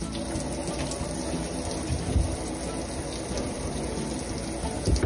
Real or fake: real